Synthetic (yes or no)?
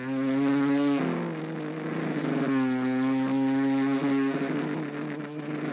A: no